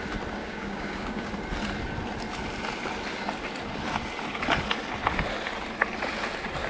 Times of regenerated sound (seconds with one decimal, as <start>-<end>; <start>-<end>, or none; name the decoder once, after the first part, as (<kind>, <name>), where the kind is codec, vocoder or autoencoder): 0.4-1.3 (codec, DAC)